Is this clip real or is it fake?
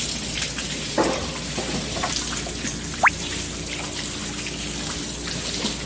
real